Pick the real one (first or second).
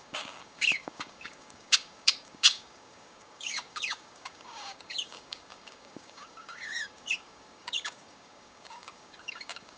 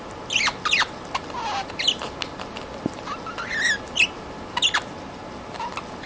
second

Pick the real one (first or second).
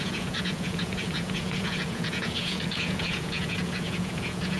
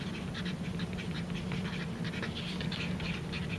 second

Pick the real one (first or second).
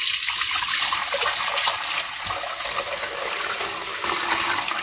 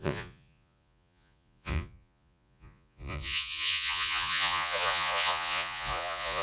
first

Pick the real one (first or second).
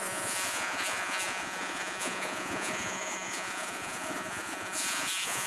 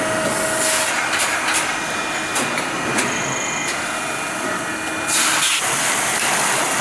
second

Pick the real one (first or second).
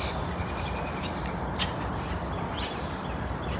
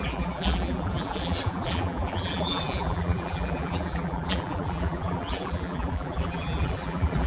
first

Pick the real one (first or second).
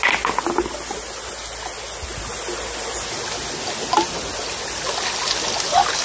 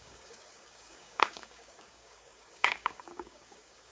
first